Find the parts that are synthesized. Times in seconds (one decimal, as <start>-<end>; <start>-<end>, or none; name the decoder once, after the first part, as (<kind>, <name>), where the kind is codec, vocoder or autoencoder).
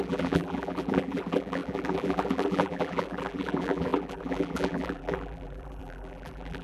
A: 0.0-6.6 (vocoder, BigVGAN v2)